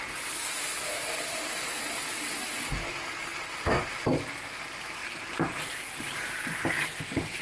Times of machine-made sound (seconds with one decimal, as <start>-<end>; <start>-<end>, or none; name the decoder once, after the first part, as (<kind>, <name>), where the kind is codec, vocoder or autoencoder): none